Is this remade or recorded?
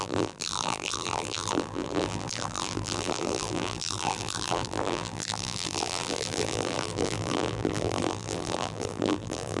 remade